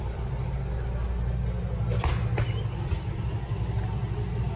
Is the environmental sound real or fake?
real